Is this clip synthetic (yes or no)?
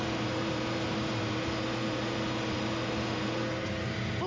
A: no